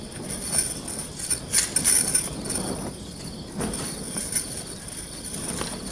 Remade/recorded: recorded